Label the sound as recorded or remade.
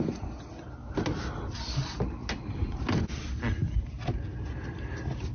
recorded